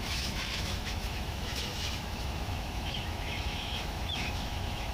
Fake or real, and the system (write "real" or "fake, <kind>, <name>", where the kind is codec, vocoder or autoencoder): fake, autoencoder, DAC-VAE